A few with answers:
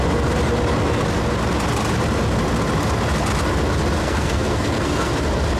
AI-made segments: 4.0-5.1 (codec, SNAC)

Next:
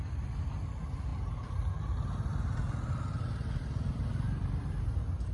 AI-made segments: none